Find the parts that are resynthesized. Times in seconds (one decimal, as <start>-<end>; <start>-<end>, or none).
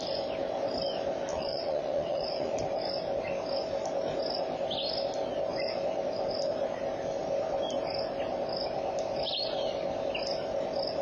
1.3-2.6